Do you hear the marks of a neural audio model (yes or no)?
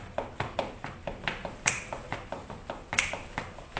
yes